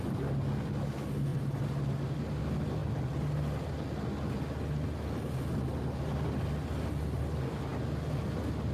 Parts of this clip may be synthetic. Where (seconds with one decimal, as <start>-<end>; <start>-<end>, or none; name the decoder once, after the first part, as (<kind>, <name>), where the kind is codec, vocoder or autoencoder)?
1.3-2.4 (vocoder, BigVGAN v2)